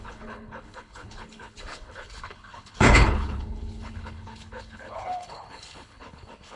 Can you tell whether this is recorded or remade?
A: remade